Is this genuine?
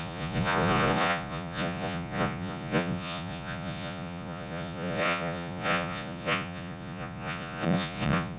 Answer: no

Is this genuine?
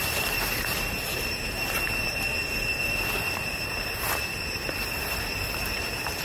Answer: no